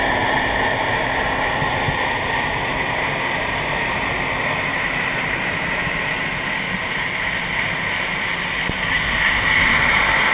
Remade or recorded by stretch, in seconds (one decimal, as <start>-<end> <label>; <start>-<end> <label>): 0.0-4.7 recorded; 4.7-5.9 remade; 5.9-10.3 recorded